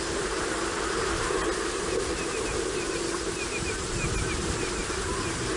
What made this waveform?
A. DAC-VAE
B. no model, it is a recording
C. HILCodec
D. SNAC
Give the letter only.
B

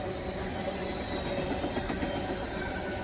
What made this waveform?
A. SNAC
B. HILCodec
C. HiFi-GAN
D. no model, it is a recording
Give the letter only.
D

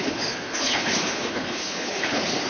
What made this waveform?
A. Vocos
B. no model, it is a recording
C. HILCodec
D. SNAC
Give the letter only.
C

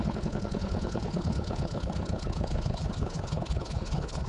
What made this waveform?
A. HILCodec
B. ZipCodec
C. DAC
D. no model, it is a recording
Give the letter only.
A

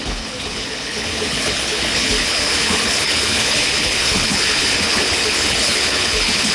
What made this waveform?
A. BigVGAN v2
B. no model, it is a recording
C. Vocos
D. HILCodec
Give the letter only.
D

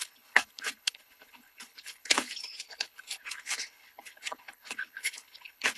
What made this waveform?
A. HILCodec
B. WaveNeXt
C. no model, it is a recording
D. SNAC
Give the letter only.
A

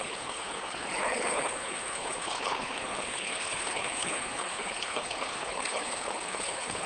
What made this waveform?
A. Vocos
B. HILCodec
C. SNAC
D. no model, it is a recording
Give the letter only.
B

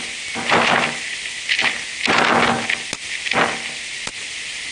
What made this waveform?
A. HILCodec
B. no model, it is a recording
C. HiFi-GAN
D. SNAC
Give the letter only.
B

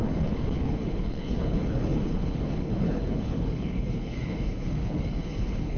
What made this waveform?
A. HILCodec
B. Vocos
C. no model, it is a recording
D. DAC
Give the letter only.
A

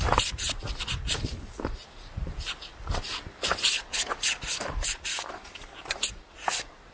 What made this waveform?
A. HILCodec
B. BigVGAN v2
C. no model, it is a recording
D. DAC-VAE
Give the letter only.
C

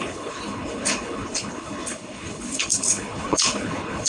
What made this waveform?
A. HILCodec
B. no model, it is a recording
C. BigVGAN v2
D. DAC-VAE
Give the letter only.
A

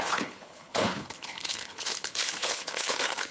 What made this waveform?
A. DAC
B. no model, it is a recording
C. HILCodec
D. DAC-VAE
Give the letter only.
C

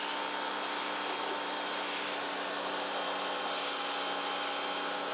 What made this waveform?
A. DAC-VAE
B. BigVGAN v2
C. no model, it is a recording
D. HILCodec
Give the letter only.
C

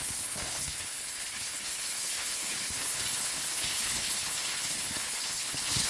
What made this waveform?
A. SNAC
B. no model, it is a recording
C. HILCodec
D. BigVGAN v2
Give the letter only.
C